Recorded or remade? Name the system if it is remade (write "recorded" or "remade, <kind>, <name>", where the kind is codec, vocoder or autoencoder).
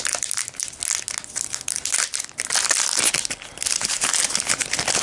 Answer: recorded